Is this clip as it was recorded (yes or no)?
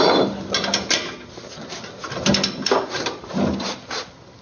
yes